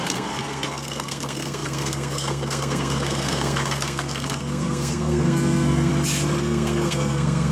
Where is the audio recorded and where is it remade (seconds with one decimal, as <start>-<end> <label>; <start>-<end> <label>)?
0.0-5.9 remade; 5.9-6.4 recorded; 6.4-7.5 remade